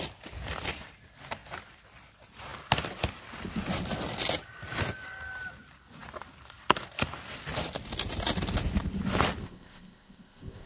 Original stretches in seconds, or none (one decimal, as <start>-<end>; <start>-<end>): 0.0-9.4